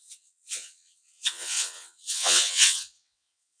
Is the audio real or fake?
fake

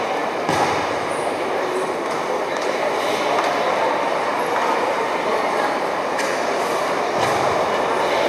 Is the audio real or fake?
real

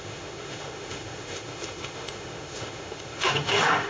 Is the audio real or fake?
fake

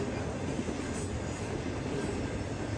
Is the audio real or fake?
real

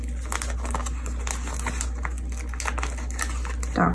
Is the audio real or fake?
real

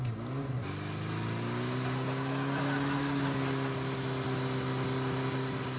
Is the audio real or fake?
real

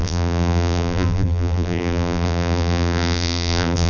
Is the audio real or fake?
fake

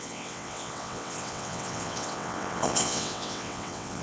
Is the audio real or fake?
fake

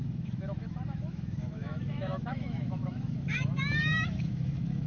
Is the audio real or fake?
fake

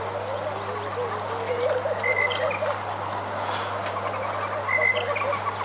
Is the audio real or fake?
real